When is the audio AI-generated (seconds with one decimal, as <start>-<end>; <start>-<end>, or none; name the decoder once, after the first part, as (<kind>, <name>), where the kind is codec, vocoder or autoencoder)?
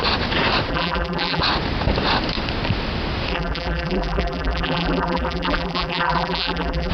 0.7-1.4 (vocoder, BigVGAN v2); 3.3-6.9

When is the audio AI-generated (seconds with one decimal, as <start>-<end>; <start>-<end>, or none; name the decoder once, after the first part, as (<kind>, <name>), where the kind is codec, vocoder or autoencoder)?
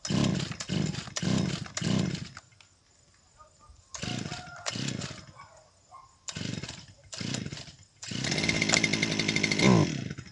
6.5-7.6 (vocoder, BigVGAN v2)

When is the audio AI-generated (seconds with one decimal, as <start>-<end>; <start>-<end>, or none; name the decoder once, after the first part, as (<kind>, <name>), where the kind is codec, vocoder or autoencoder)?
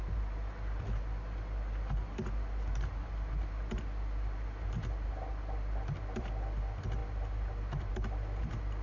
none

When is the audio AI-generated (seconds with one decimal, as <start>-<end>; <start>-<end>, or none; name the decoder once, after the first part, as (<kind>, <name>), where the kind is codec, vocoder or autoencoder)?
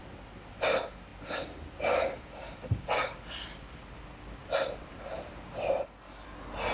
4.4-5.3 (vocoder, BigVGAN v2)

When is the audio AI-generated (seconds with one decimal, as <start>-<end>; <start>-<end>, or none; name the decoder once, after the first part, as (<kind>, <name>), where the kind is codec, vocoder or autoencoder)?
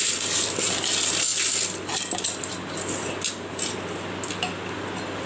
none